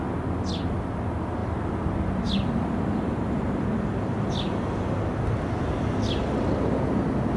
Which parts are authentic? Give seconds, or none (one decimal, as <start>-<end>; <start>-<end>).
0.0-7.4